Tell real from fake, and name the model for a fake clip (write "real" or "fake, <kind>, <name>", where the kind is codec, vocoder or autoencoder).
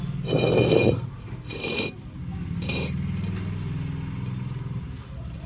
real